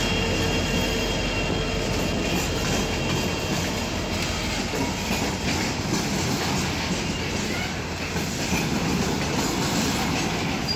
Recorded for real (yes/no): yes